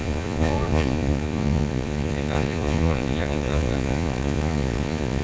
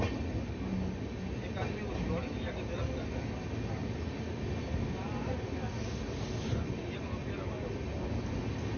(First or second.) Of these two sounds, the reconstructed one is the first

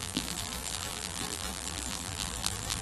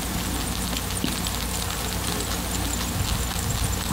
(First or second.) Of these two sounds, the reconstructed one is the first